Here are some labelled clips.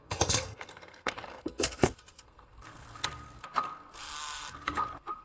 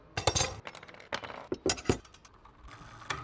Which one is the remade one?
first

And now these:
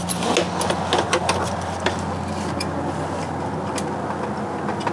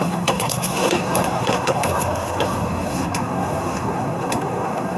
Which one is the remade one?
second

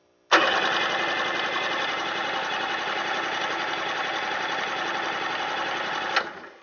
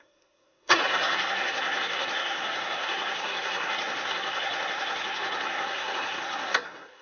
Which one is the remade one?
second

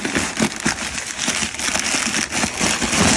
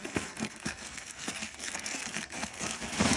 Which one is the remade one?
second